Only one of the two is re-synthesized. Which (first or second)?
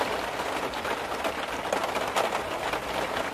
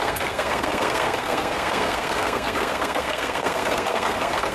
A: second